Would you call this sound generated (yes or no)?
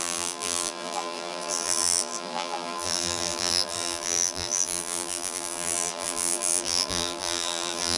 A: yes